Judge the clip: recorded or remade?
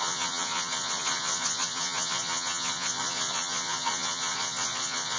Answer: remade